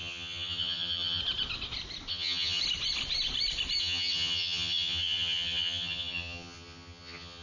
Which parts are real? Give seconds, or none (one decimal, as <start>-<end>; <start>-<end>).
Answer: 1.2-2.1; 2.6-3.8